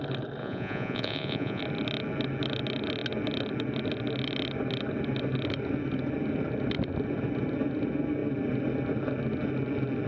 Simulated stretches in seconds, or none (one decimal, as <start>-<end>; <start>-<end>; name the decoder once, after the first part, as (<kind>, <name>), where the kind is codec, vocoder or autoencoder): 0.4-1.6 (vocoder, Vocos)